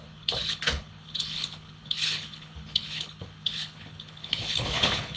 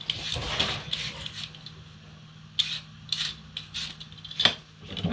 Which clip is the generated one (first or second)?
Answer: first